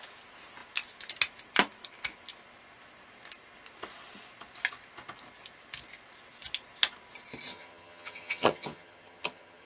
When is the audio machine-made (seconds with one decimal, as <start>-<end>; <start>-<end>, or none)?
7.5-9.7